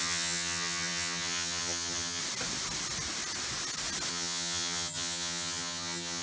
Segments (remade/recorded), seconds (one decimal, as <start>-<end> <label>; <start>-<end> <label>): 0.0-2.2 remade; 2.2-4.1 recorded; 4.1-6.2 remade